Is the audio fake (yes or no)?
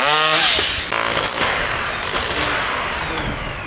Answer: no